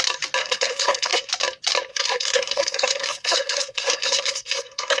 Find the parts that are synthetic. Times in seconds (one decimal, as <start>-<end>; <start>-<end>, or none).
0.4-1.3; 1.9-5.0